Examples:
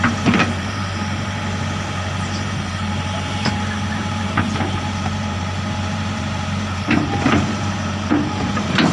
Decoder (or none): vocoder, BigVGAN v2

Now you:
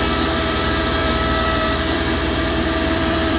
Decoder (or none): vocoder, BigVGAN v2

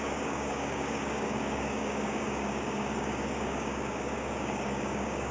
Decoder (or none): codec, DAC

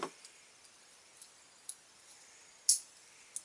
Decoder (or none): none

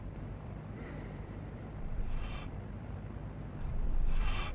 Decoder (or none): vocoder, BigVGAN v2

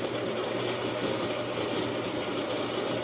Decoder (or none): none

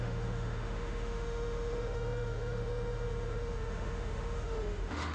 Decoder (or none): autoencoder, DAC-VAE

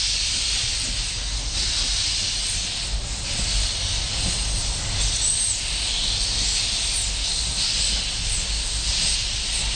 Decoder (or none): none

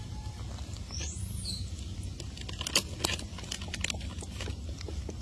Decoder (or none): none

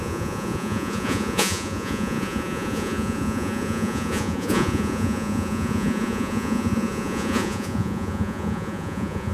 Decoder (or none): vocoder, Vocos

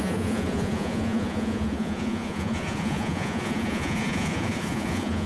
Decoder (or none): vocoder, Vocos